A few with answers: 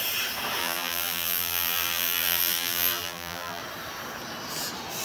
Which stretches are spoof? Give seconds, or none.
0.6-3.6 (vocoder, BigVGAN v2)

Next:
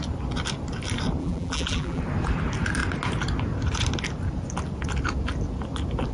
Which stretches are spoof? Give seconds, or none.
1.2-2.0 (vocoder, BigVGAN v2)

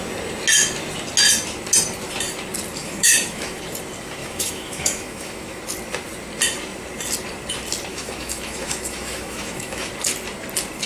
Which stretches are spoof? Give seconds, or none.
2.8-3.6 (autoencoder, DAC-VAE); 4.2-5.6; 7.9-9.9

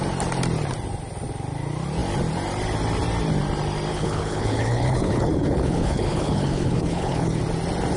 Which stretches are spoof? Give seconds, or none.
3.9-7.4 (codec, HILCodec)

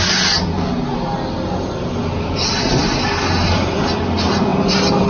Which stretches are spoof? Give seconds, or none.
none

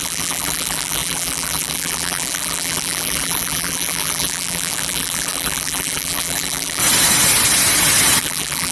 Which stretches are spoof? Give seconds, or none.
0.0-6.8 (vocoder, BigVGAN v2); 8.2-8.7

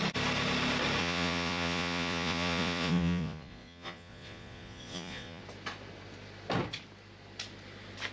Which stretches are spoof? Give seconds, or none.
1.0-5.4 (vocoder, Vocos)